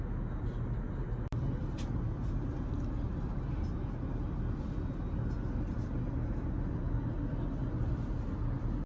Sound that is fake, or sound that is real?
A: real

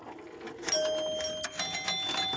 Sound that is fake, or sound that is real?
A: real